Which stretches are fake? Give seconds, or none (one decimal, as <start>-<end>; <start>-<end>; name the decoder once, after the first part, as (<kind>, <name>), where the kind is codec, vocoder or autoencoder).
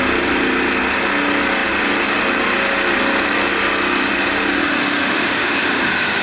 4.6-6.2 (autoencoder, DAC-VAE)